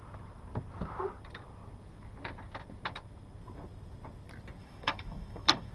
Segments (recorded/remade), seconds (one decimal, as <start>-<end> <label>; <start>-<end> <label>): 0.0-4.6 recorded; 4.6-5.7 remade